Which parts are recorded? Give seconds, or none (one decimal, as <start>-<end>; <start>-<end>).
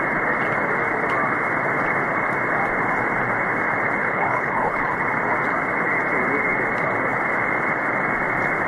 0.0-4.0; 5.0-8.7